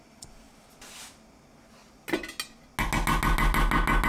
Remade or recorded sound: recorded